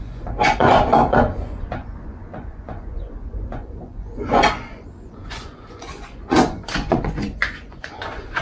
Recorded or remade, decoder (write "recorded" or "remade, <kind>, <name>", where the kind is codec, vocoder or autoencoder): remade, vocoder, Vocos